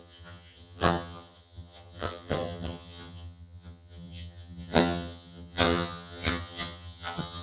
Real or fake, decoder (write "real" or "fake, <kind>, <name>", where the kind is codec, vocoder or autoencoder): fake, vocoder, HiFi-GAN